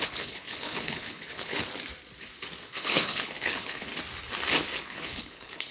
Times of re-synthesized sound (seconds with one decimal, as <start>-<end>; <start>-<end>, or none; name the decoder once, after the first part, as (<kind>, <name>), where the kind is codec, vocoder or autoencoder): 0.0-1.6 (codec, HILCodec); 2.7-3.9; 4.8-5.7